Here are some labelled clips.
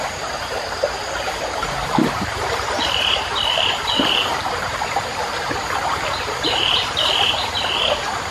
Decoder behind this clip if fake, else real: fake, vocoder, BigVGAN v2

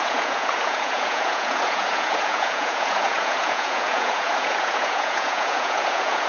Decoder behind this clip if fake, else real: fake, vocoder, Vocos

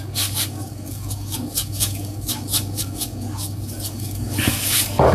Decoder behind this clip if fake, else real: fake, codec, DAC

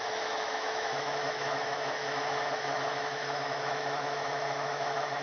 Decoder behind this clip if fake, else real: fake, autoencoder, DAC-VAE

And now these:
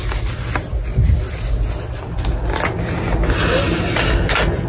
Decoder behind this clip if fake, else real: real